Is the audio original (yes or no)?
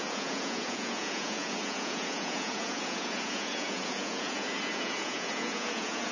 no